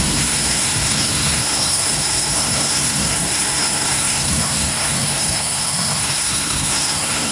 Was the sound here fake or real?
fake